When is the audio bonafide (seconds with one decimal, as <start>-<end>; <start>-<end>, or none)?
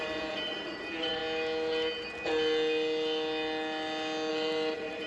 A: 1.2-4.3